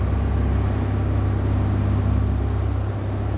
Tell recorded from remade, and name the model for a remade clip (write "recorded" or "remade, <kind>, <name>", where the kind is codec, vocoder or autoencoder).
recorded